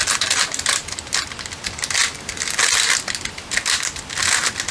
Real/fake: real